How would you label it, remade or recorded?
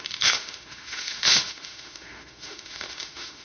remade